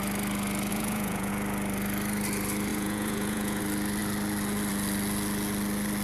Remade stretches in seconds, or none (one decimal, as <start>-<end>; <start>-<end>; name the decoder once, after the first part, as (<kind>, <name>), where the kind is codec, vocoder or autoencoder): 0.7-1.3 (vocoder, Vocos); 2.7-3.6